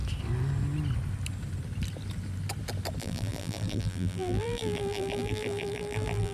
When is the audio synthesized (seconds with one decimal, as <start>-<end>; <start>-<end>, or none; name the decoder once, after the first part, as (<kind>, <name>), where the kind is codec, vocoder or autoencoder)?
3.0-6.3 (vocoder, BigVGAN v2)